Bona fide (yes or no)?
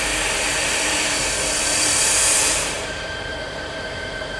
no